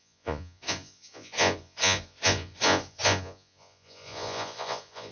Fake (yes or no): yes